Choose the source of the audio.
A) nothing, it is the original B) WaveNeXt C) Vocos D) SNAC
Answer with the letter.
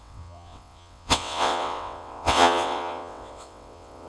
B